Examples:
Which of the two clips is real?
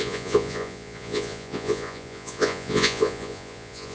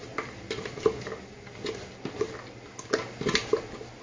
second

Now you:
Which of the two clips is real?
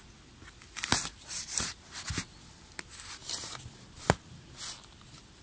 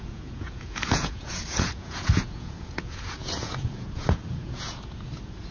first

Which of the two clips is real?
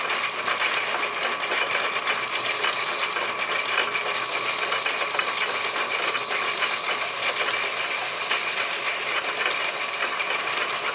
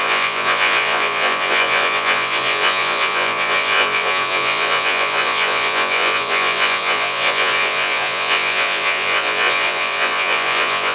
first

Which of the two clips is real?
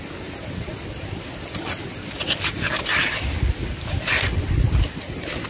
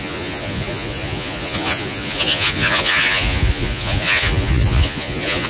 first